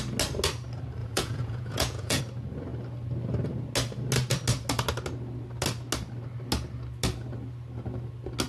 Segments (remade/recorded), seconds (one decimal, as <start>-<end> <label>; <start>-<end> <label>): 0.0-1.0 recorded; 1.0-2.2 remade; 2.2-8.5 recorded